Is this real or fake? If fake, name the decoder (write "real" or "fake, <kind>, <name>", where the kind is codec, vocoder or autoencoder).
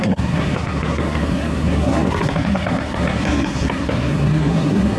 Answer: fake, codec, SNAC